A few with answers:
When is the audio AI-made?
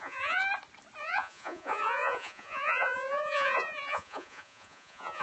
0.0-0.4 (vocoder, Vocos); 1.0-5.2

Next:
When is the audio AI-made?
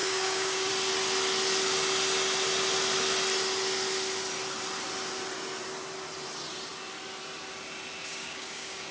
0.0-0.7 (codec, DAC); 8.1-8.9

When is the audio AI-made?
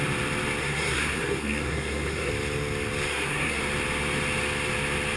0.6-2.3 (codec, SNAC); 3.1-3.6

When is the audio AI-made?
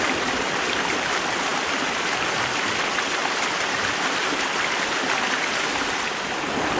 none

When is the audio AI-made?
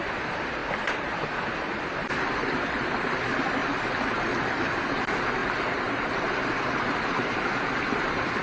none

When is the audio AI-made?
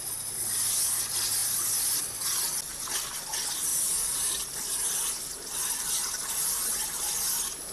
none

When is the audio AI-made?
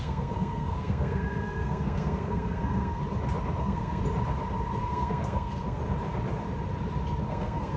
0.0-3.0 (codec, SNAC); 3.6-4.0; 4.8-5.8; 7.3-7.8